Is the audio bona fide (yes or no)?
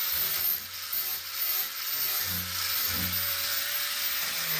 yes